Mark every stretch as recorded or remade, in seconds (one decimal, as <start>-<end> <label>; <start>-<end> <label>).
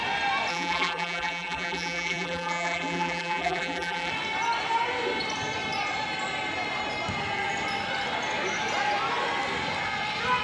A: 0.0-0.5 recorded; 0.5-4.1 remade; 4.1-10.4 recorded